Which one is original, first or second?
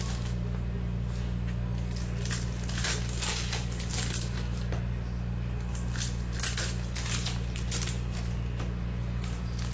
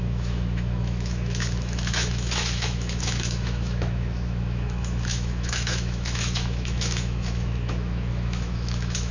first